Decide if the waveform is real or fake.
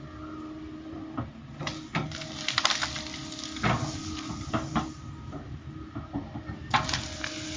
real